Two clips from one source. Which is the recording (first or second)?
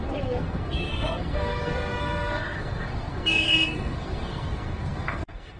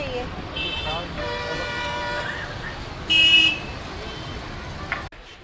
second